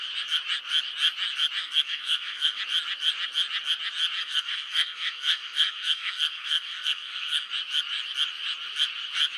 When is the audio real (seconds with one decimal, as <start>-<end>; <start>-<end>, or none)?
0.0-1.6; 2.6-4.2; 7.5-9.4